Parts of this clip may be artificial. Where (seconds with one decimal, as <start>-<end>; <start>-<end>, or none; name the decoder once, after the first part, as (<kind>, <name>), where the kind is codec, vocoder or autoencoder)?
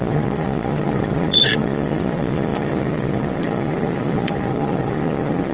0.0-5.5 (vocoder, Vocos)